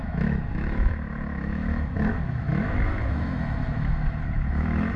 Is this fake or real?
fake